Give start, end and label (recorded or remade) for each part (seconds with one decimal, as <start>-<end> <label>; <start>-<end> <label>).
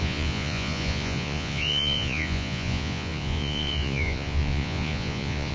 0.0-5.5 remade